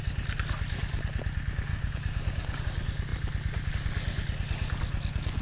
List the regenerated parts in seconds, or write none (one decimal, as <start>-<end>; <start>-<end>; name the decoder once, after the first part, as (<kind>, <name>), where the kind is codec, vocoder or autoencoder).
1.7-2.6 (codec, DAC)